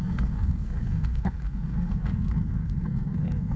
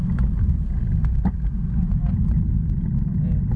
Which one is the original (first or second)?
second